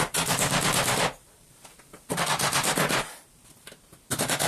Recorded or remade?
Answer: remade